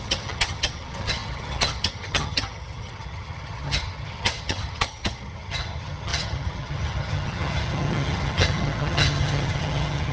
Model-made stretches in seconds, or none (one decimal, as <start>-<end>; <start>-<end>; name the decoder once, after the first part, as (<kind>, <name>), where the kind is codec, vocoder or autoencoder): 0.0-10.1 (vocoder, HiFi-GAN)

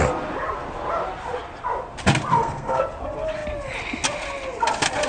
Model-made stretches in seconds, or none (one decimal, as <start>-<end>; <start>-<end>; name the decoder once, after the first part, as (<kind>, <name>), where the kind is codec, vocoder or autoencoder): 2.3-2.8 (codec, SNAC)